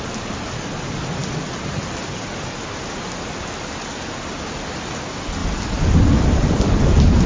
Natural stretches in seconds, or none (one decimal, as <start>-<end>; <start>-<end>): 0.0-7.3